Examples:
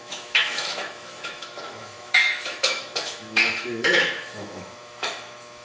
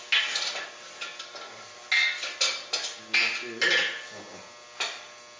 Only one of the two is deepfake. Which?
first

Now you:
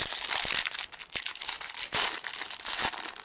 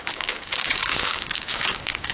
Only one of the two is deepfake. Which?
second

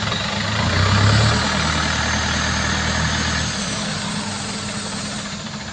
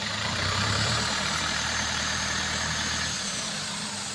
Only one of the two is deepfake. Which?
second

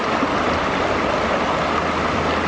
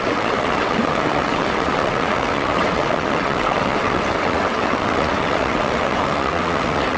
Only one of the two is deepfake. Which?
second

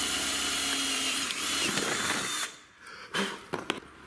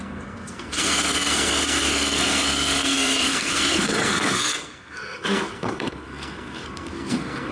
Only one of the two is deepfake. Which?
second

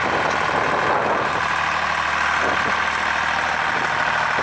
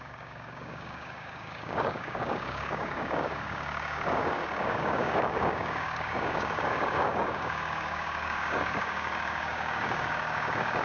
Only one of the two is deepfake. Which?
second